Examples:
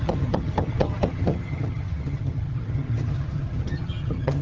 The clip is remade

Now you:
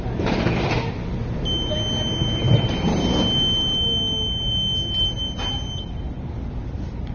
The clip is recorded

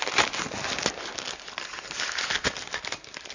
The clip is recorded